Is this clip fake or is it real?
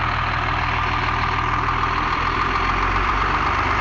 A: fake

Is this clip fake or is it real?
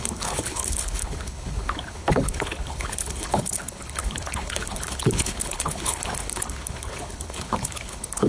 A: fake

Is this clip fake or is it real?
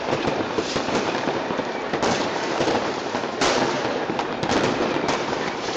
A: fake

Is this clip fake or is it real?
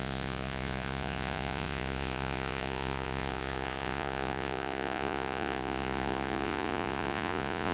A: fake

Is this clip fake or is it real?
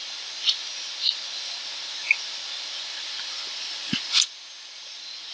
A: real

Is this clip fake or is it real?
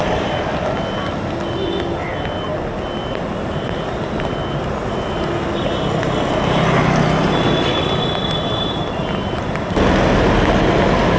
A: real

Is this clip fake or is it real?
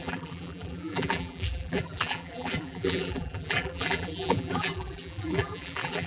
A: fake